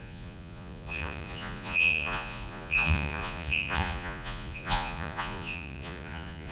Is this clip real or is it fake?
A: fake